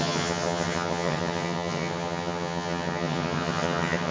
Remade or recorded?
remade